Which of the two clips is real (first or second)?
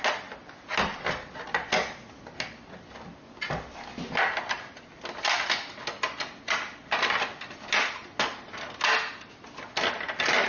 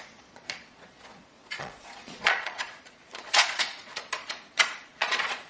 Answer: first